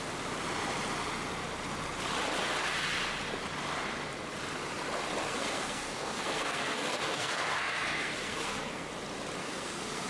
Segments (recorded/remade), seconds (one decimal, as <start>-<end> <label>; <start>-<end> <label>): 0.0-5.2 recorded; 5.2-8.9 remade; 8.9-9.4 recorded; 9.4-10.1 remade